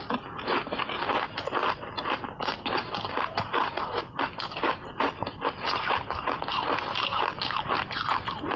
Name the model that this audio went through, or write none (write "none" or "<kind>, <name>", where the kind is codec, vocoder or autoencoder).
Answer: none